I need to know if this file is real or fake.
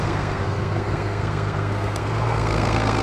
fake